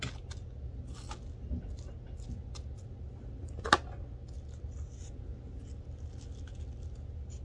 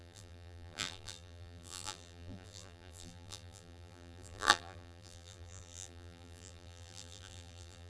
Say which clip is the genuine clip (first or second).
first